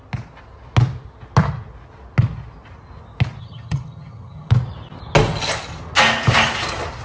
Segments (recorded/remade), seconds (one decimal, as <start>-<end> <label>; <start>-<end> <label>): 0.0-3.4 recorded; 3.4-4.5 remade; 4.5-7.0 recorded